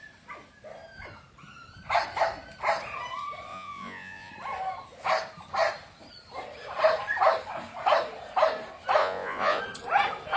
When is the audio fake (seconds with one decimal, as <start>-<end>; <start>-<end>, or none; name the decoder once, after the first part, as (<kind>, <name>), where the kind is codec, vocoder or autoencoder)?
3.5-4.3 (vocoder, Vocos); 9.0-9.6